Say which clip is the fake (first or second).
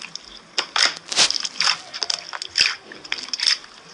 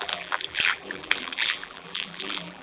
second